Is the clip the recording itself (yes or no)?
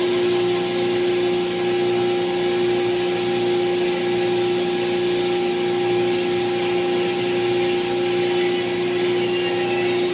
yes